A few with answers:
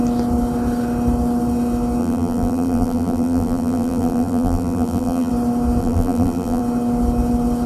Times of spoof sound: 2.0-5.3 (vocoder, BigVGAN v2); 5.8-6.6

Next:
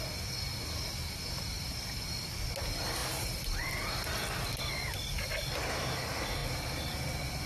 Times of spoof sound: 3.0-3.7 (vocoder, BigVGAN v2)

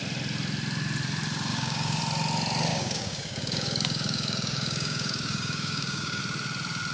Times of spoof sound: 1.5-2.0 (codec, DAC); 2.7-6.2

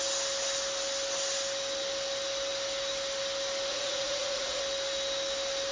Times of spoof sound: 3.7-4.6 (vocoder, Vocos)